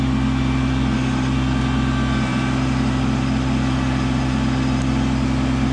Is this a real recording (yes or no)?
yes